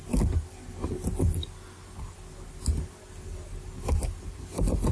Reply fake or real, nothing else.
real